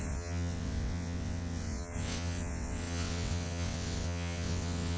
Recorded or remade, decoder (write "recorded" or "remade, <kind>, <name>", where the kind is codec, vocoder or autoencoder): remade, vocoder, WaveNeXt